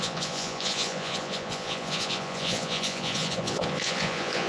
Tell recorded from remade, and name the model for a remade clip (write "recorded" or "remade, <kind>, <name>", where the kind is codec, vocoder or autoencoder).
remade, vocoder, Vocos